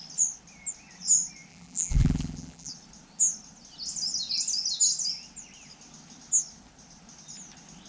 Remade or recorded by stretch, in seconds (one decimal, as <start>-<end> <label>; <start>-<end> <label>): 0.0-1.5 recorded; 1.5-2.7 remade; 2.7-7.9 recorded